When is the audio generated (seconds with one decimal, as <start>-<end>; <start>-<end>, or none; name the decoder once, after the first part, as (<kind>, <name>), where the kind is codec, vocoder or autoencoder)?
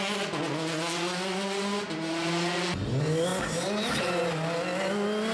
none